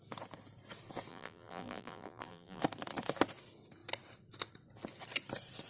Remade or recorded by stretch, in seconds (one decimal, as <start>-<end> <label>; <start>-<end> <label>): 0.0-1.1 recorded; 1.1-2.6 remade; 2.6-5.7 recorded